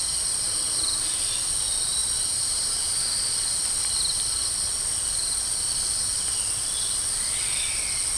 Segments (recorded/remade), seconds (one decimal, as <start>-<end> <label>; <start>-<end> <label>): 0.0-2.0 recorded; 2.0-3.9 remade; 3.9-8.2 recorded